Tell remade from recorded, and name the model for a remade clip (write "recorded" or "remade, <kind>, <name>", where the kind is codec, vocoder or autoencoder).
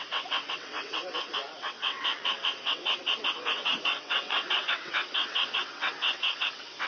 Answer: remade, vocoder, WaveNeXt